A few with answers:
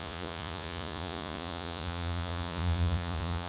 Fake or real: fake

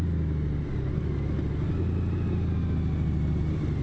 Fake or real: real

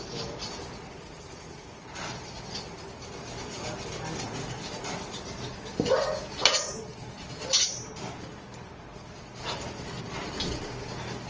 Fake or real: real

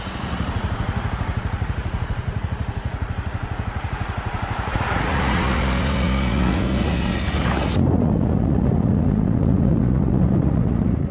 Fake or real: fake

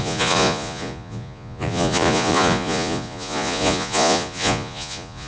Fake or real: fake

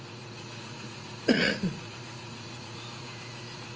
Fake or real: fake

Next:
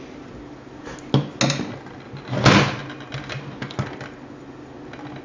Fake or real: real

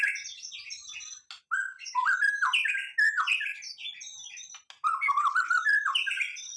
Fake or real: real